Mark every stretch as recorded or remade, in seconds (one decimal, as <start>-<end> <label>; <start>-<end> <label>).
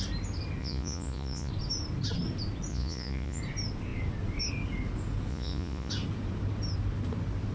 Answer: 0.0-0.6 recorded; 0.6-1.5 remade; 1.5-2.7 recorded; 2.7-3.4 remade; 3.4-5.3 recorded; 5.3-5.9 remade; 5.9-7.5 recorded